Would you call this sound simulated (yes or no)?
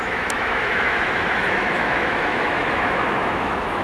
yes